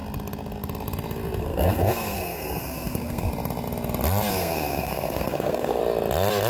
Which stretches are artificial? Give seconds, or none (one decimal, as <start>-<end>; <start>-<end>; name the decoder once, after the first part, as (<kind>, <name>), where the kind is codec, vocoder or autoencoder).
1.4-3.3 (codec, SNAC); 4.3-5.8